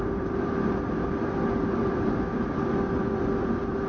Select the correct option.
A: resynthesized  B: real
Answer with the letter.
A